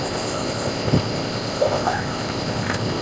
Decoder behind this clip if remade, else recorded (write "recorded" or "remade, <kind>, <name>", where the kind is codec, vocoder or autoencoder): remade, codec, ZipCodec